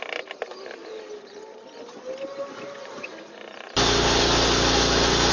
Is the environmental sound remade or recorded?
recorded